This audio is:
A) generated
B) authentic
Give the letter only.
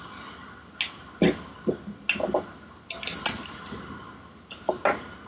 B